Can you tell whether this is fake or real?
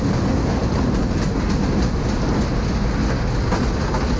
real